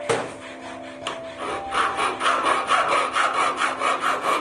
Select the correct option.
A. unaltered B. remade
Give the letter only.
A